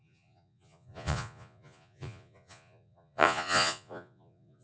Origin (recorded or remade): remade